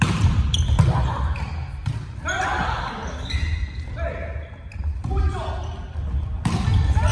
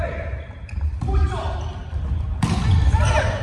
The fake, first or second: second